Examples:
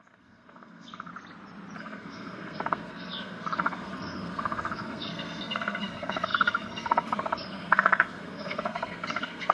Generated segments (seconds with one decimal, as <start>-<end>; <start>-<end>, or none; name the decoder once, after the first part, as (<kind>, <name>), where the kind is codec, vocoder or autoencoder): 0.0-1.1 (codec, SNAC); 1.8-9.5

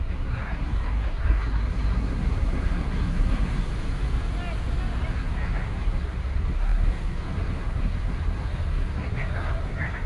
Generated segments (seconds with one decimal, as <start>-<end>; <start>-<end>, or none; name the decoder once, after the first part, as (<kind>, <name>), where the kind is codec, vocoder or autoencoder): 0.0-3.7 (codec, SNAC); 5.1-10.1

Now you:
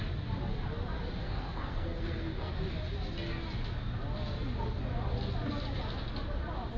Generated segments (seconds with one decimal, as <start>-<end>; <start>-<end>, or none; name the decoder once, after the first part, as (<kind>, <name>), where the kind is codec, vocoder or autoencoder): 1.2-2.5 (codec, SNAC)

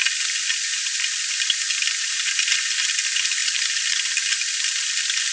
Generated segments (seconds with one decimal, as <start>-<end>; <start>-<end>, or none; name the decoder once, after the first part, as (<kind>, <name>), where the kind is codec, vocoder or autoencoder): none

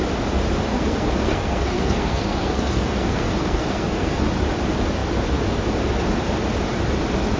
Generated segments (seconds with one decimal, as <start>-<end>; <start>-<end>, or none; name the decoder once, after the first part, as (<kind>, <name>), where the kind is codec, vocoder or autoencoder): 0.7-4.2 (codec, SNAC)

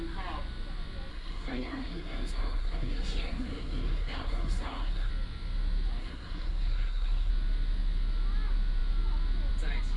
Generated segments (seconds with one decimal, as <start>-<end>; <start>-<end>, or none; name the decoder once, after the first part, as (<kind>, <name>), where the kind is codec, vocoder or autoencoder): 1.1-5.1 (codec, SNAC); 6.0-7.3

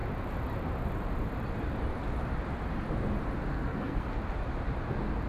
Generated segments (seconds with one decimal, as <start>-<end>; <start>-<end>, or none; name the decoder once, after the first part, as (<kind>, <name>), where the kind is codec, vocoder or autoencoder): 3.5-4.1 (codec, SNAC)

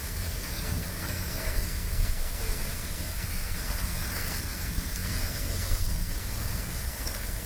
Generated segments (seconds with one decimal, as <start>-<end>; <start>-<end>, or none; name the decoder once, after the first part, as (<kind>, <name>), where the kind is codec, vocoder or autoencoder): 0.0-7.5 (codec, SNAC)